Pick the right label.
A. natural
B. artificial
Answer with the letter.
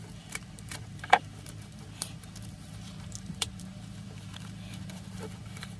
B